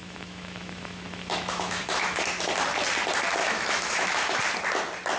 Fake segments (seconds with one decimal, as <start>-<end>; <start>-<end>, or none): 0.0-2.2; 3.4-4.4